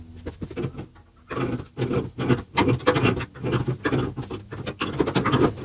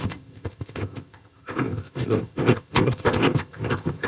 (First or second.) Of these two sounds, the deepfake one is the second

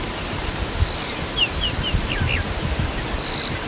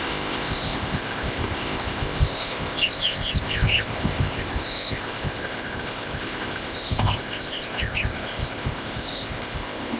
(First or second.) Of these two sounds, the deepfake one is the second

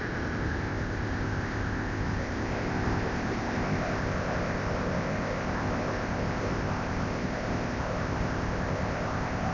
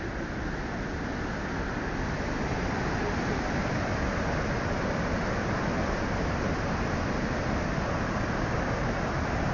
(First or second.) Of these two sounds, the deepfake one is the first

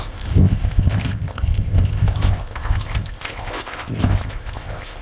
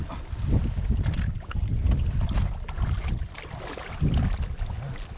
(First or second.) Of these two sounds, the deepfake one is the first